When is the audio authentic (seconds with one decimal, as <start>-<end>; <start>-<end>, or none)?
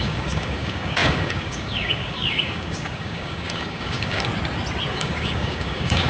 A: 4.3-4.9